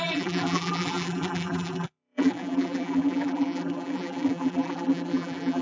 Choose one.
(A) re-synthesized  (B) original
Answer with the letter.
A